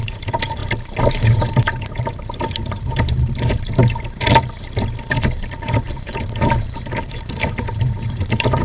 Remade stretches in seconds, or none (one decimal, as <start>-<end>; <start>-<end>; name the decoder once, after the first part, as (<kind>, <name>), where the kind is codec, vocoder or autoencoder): 0.0-0.6 (vocoder, BigVGAN v2); 1.1-3.8; 5.4-8.6